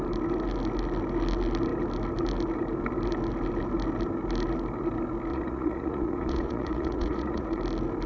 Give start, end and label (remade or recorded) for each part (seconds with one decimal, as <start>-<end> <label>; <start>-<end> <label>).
0.0-5.3 recorded; 5.3-7.6 remade; 7.6-8.1 recorded